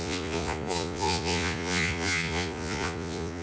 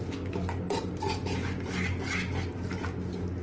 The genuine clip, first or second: second